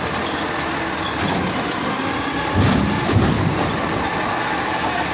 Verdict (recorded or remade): recorded